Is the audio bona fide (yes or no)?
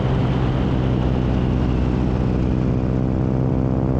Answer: yes